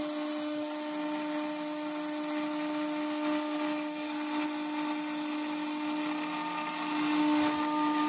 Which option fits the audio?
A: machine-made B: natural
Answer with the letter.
B